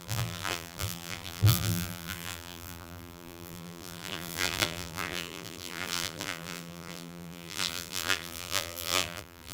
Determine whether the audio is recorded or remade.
remade